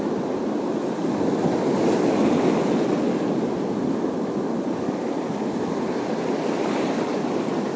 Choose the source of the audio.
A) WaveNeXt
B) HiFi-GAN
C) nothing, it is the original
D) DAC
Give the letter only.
C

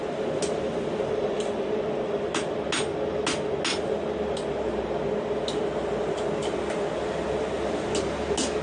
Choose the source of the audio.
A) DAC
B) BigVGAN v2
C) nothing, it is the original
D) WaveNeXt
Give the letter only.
C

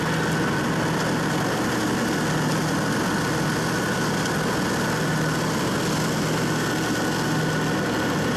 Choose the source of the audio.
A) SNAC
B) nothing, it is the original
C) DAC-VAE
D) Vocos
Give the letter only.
B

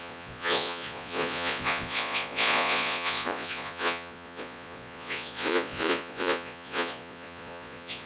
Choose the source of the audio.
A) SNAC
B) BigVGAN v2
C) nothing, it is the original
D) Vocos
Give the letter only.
D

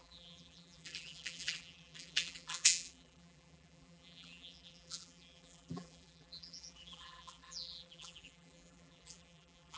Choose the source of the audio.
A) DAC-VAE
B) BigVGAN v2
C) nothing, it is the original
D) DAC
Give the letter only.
B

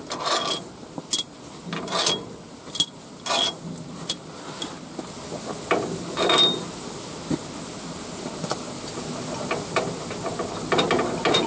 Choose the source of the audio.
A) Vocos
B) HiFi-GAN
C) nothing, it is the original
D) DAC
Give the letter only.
C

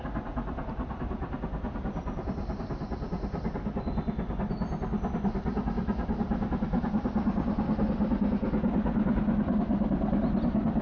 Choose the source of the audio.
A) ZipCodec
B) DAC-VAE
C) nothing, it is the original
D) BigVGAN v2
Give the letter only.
C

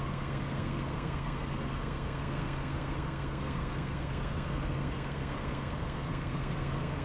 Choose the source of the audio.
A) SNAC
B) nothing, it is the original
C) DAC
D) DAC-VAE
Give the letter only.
A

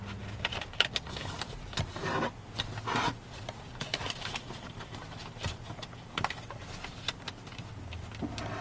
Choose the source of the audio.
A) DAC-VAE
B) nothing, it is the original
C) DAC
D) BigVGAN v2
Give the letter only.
B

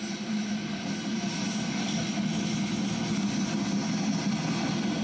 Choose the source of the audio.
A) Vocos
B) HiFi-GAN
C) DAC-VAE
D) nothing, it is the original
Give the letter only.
D